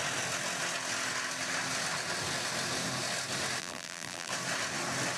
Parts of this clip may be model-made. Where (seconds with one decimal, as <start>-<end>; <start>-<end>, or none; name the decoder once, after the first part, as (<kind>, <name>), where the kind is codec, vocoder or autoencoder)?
3.6-4.3 (vocoder, BigVGAN v2)